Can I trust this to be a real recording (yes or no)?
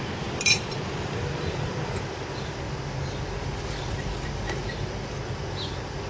yes